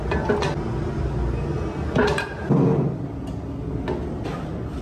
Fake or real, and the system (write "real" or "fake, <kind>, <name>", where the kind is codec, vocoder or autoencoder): real